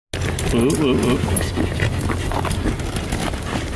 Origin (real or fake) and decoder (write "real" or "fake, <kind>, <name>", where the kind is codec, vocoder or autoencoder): real